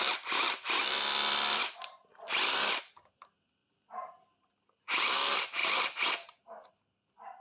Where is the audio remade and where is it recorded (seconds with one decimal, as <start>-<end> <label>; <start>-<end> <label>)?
0.0-7.4 recorded